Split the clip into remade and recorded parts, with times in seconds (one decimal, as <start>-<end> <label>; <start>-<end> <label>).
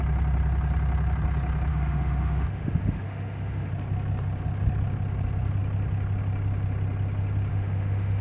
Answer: 0.0-1.7 recorded; 1.7-3.7 remade; 3.7-7.5 recorded; 7.5-8.2 remade